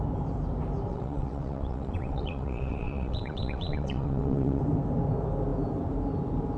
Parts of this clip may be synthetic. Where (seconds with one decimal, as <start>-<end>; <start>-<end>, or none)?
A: 0.9-4.6